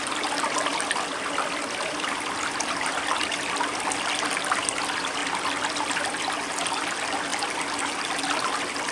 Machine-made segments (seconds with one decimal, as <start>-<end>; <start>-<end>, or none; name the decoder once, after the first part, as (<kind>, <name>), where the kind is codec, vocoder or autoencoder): 0.7-3.3 (vocoder, BigVGAN v2); 7.3-8.5